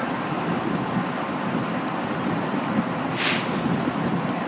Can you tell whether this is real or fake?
real